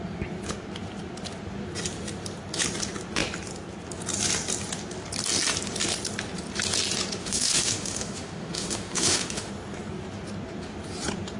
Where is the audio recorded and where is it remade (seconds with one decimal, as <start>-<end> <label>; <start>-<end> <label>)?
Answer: 0.0-7.2 recorded; 7.2-9.5 remade; 9.5-11.4 recorded